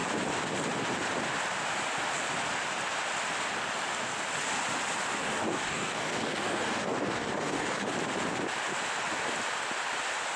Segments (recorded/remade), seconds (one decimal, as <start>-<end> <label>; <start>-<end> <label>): 0.0-5.2 recorded; 5.2-7.9 remade; 7.9-10.4 recorded